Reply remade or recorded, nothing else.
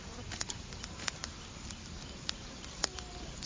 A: remade